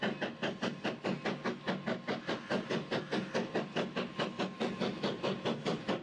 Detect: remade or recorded recorded